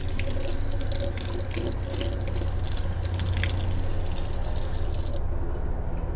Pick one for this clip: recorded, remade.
recorded